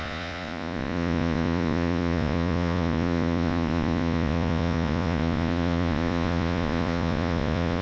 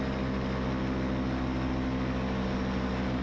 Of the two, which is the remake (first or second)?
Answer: first